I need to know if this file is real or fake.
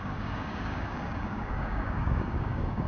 fake